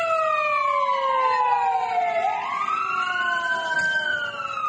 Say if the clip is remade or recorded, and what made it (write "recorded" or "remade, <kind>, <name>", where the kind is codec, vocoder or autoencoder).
recorded